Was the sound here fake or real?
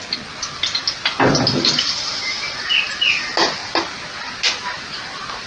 real